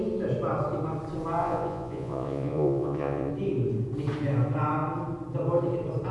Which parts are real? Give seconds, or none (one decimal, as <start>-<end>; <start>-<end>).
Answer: 0.0-1.4; 3.3-6.1